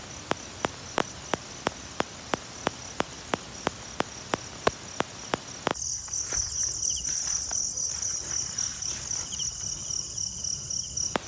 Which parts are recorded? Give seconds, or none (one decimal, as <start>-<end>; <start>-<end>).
0.0-11.3